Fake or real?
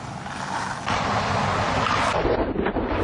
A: real